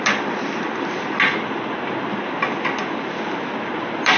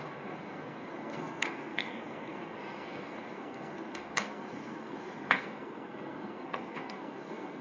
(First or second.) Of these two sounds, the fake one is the second